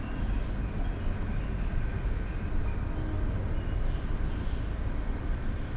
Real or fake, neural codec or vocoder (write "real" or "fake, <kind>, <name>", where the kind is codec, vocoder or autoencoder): real